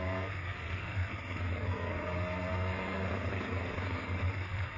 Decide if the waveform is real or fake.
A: fake